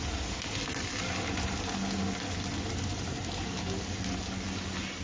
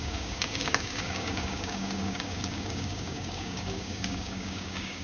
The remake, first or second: second